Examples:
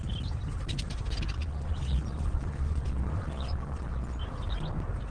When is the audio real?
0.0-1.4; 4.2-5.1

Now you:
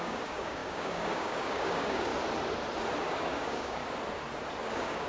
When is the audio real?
2.1-3.0; 3.8-4.6

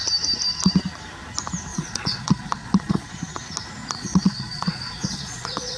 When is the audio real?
0.0-1.7; 3.1-3.8